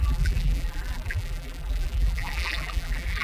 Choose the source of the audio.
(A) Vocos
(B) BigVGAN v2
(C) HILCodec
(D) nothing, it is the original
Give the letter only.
B